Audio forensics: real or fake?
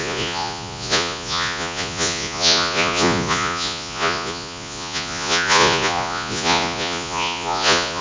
fake